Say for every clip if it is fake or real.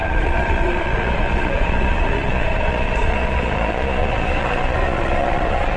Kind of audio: fake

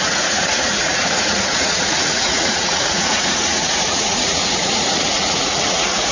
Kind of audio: fake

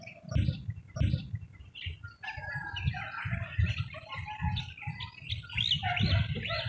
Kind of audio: real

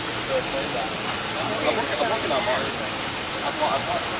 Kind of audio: real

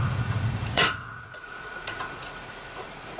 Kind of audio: fake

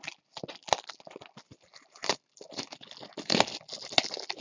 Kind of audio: real